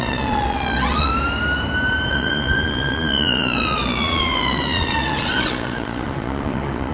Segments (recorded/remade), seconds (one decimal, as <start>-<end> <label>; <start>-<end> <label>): 0.0-1.1 remade; 1.1-2.1 recorded; 2.1-6.9 remade